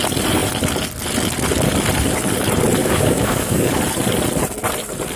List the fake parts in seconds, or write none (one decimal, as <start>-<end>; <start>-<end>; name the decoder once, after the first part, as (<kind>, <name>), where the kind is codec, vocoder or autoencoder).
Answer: 2.8-3.8 (codec, DAC)